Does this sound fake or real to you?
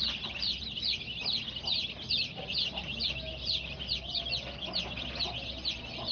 real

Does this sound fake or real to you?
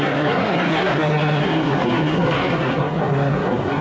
fake